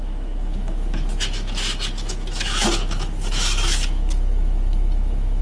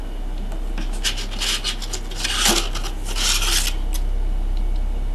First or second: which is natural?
second